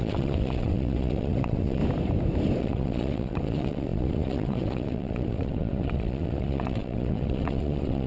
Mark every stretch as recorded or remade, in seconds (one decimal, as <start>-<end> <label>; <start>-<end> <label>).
0.0-1.8 remade; 1.8-2.6 recorded; 2.6-8.1 remade